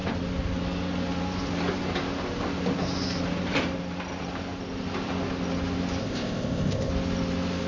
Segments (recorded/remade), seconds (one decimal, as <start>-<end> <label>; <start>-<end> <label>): 0.0-6.0 recorded; 6.0-6.9 remade; 6.9-7.7 recorded